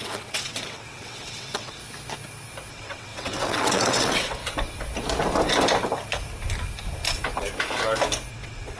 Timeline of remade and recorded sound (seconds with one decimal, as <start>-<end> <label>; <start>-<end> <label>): 0.0-1.8 remade; 1.8-2.7 recorded; 2.7-4.4 remade; 4.4-8.3 recorded; 8.3-8.8 remade